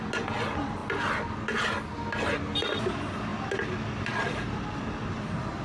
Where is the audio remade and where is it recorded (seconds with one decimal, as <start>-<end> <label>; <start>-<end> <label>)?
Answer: 0.0-5.6 recorded